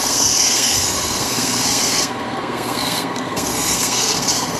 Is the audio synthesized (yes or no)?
yes